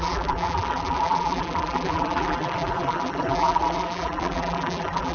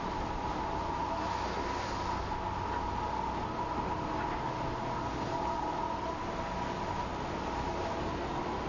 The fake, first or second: first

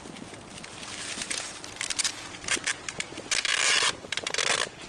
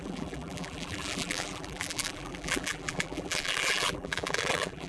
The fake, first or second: second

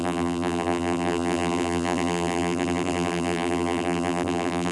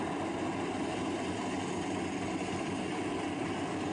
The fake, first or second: first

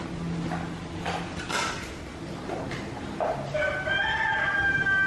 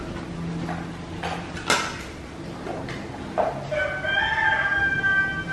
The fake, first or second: first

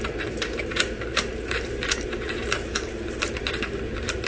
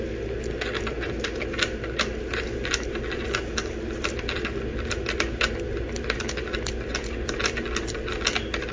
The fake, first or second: first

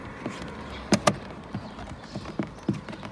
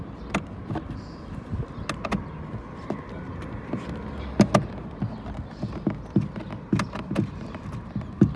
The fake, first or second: first